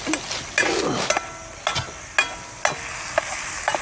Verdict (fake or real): real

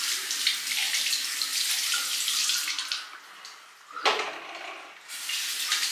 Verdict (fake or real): real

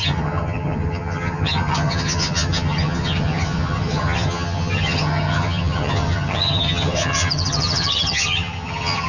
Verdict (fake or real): fake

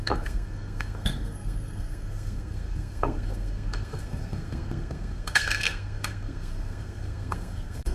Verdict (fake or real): fake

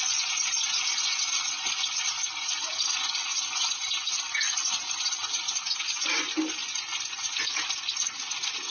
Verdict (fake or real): real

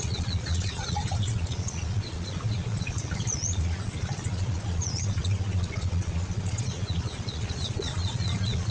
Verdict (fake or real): fake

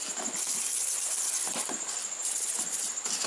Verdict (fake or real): real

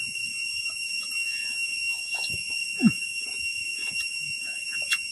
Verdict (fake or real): fake